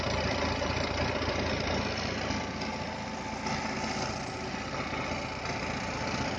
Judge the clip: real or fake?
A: real